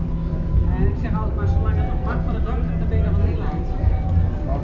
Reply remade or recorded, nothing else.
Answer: recorded